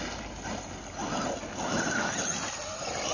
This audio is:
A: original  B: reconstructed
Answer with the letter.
A